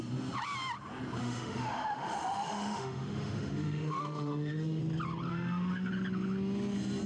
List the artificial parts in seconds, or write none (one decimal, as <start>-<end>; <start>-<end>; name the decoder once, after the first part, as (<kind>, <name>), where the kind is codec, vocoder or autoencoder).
1.2-4.8 (autoencoder, DAC-VAE); 5.3-5.9